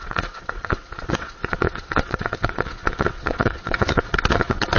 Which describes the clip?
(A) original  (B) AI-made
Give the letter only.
B